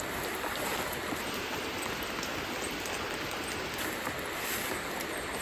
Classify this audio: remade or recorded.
recorded